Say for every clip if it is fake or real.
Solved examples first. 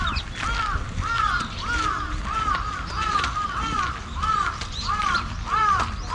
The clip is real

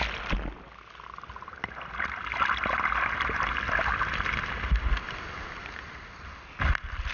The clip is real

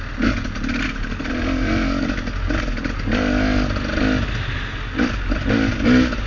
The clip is real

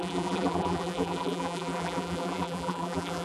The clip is fake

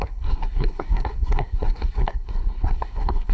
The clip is fake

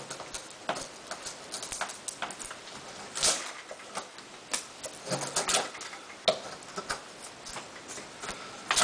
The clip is real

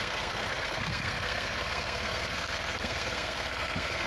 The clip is fake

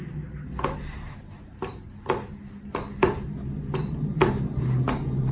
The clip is real